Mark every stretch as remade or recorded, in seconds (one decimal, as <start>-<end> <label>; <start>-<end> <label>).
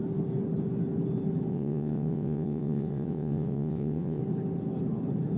0.0-1.5 recorded; 1.5-4.2 remade; 4.2-5.4 recorded